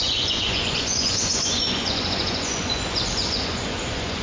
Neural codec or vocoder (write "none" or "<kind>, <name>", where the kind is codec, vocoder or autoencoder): vocoder, Vocos